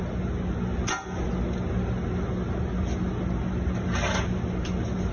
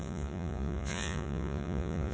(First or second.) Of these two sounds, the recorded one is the first